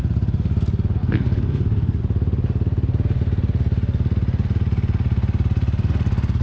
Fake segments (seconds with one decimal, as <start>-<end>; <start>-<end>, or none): 1.0-2.0